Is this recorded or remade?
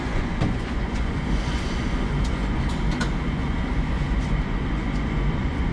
remade